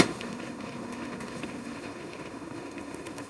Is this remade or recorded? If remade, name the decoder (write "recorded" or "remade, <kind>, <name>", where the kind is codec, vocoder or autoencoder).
remade, autoencoder, DAC-VAE